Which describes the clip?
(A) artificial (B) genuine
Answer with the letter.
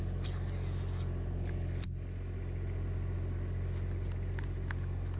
B